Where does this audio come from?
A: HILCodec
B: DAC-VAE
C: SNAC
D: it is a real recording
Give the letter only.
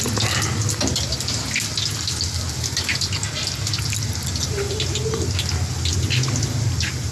D